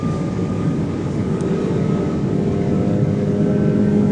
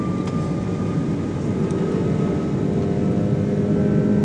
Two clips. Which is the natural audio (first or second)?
second